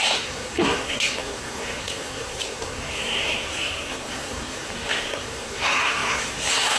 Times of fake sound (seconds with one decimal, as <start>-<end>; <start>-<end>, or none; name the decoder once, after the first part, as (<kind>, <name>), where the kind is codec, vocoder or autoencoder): 0.0-6.8 (codec, SNAC)